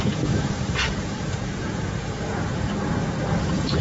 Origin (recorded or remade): remade